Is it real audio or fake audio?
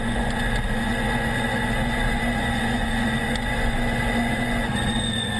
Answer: fake